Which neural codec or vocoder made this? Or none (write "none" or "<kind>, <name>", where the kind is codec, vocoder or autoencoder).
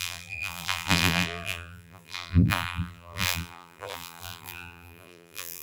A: vocoder, BigVGAN v2